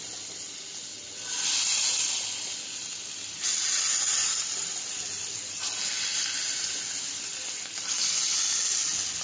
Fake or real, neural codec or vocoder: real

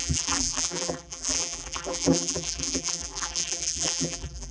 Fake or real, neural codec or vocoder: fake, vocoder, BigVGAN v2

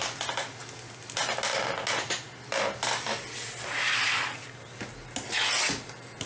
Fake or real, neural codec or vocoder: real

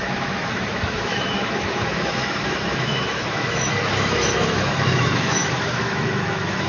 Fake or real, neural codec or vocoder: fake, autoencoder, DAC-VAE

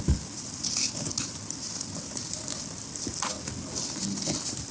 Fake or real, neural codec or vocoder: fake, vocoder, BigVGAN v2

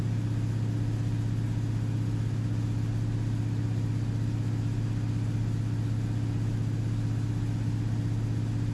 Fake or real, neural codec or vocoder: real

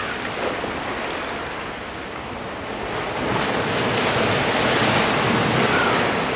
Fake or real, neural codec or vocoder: real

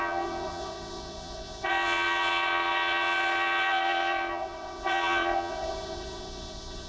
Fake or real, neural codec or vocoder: fake, vocoder, Vocos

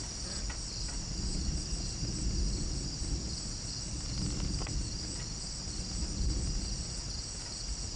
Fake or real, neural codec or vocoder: real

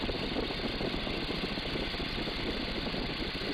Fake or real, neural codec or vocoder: real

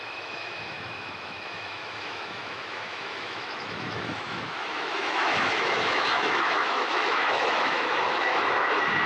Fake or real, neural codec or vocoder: fake, autoencoder, DAC-VAE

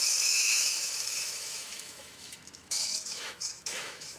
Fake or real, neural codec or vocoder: fake, autoencoder, DAC-VAE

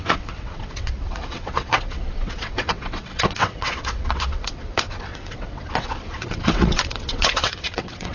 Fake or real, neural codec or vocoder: fake, vocoder, WaveNeXt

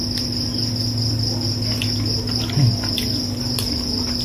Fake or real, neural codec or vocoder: real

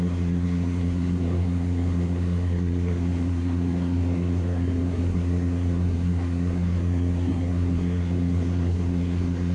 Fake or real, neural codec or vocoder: fake, codec, SNAC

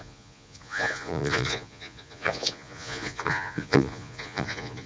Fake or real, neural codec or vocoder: fake, vocoder, Vocos